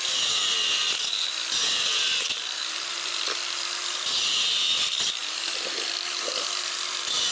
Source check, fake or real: fake